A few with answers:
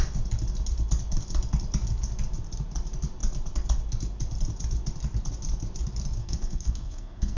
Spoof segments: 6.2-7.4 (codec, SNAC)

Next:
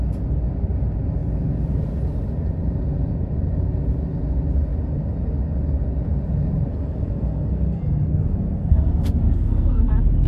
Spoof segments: 6.7-9.9 (codec, SNAC)

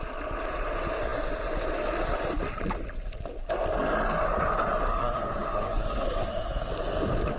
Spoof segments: 4.9-6.7 (codec, SNAC)